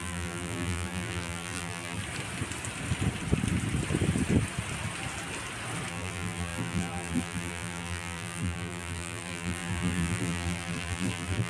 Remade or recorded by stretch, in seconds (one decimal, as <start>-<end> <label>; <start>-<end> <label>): 0.0-2.0 remade; 2.0-5.9 recorded; 5.9-11.5 remade